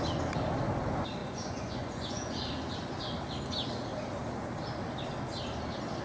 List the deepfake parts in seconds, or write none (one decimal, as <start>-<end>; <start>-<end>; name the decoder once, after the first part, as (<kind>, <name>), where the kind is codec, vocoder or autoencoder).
1.2-2.3 (vocoder, Vocos)